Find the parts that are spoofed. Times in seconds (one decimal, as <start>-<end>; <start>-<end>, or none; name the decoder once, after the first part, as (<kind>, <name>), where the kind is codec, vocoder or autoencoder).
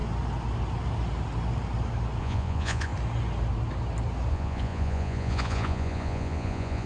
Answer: 2.2-2.9 (vocoder, Vocos); 4.3-6.9